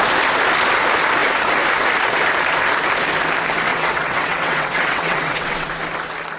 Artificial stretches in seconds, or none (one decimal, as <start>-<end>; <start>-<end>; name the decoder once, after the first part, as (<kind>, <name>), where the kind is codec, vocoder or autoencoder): 3.7-5.7 (vocoder, WaveNeXt)